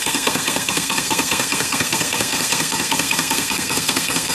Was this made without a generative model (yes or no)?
no